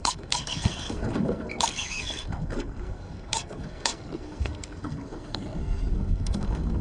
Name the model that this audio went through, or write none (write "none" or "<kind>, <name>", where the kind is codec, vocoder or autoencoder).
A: codec, SNAC